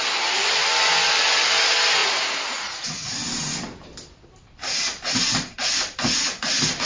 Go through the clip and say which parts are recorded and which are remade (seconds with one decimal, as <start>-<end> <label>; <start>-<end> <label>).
0.0-2.0 recorded; 2.0-3.1 remade; 3.1-6.9 recorded